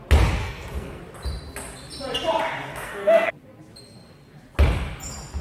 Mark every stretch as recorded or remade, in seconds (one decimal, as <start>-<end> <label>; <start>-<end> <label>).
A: 0.0-0.4 recorded; 0.4-1.0 remade; 1.0-2.7 recorded; 2.7-3.3 remade; 3.3-5.4 recorded